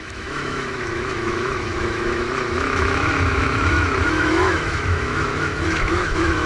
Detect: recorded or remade remade